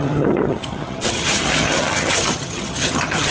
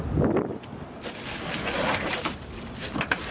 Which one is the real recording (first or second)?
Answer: second